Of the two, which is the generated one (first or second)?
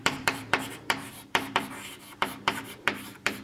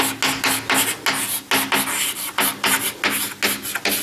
first